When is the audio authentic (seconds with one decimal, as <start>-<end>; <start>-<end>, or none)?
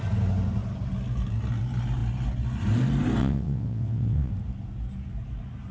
0.0-3.2; 4.3-5.7